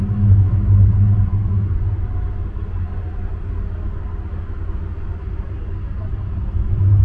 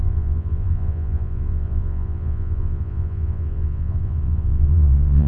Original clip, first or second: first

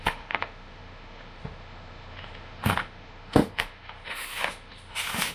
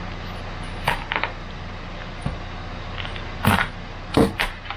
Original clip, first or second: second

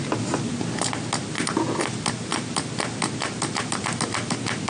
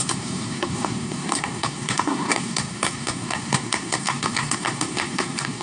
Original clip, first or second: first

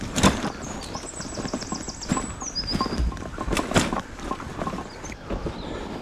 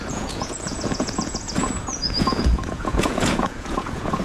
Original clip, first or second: first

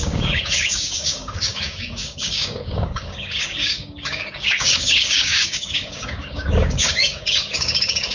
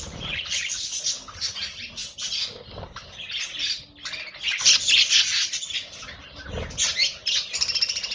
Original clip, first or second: second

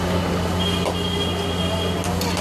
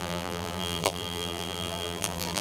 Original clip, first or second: first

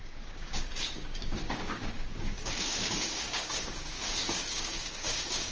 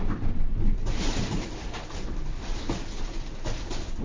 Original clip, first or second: second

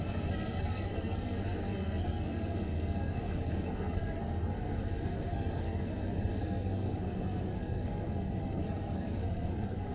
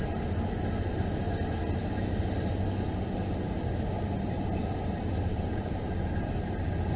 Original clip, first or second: second